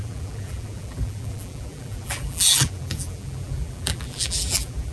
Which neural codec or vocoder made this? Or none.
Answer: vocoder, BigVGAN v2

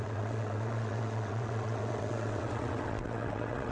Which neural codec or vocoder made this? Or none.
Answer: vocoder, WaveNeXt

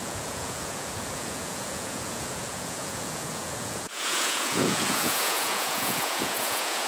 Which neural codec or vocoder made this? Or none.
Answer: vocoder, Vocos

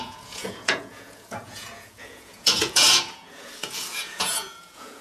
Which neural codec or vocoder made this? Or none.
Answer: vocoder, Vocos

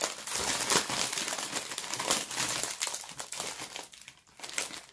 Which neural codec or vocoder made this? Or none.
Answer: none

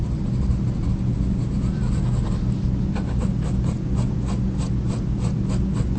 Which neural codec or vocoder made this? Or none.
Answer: none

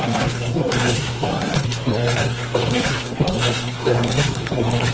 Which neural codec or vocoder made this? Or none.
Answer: codec, SNAC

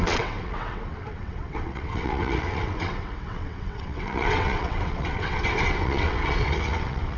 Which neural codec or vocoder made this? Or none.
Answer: vocoder, WaveNeXt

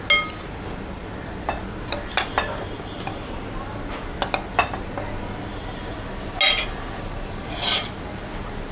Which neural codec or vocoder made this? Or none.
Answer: none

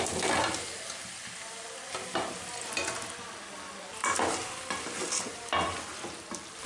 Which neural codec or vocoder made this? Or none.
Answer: none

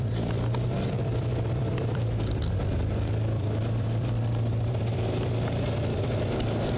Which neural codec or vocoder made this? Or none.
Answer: vocoder, BigVGAN v2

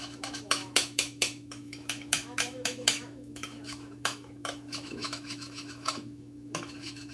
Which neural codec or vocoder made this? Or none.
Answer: autoencoder, DAC-VAE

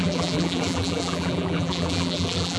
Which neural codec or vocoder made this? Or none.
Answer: vocoder, BigVGAN v2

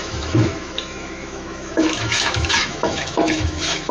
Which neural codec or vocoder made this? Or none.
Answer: autoencoder, DAC-VAE